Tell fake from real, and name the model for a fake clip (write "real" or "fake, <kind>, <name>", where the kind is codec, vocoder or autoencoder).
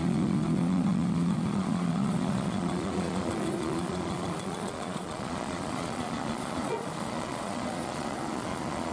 fake, vocoder, Vocos